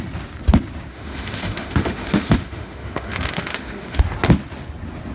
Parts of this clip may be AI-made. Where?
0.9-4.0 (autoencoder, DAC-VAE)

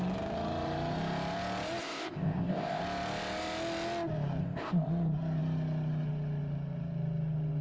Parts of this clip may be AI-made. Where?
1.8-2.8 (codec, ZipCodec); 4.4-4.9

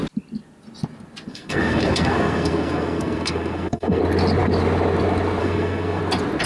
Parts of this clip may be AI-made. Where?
1.3-4.0 (codec, SNAC); 5.4-6.0